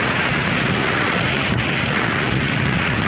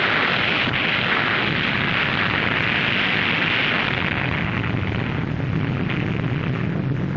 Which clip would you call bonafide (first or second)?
second